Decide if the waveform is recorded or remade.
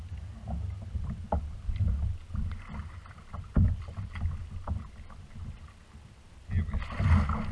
recorded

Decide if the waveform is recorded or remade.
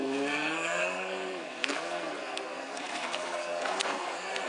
remade